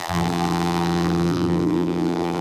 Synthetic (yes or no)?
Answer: yes